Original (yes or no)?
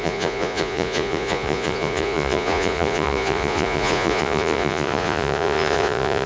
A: no